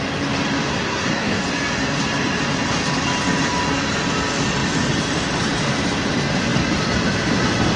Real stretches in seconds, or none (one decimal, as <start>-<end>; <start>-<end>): 0.0-0.7; 1.4-7.8